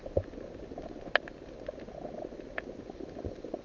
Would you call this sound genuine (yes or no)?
yes